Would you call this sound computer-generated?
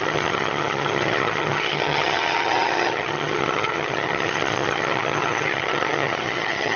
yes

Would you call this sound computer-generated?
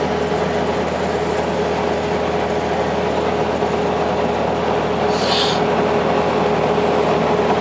no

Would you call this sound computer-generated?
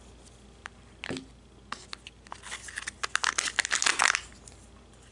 no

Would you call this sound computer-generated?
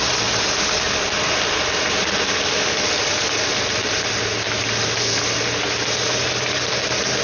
no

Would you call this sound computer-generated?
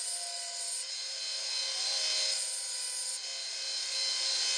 no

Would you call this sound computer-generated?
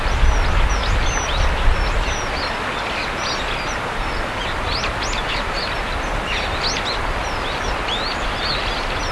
no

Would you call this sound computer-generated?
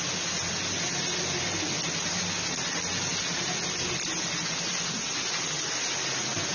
no